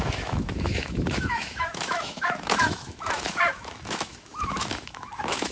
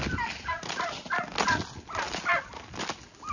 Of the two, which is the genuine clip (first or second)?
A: second